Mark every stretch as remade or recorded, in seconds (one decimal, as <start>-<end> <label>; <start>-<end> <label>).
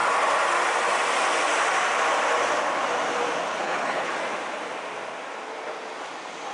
0.0-3.5 recorded; 3.5-4.1 remade; 4.1-6.5 recorded